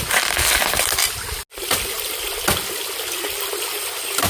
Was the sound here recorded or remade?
recorded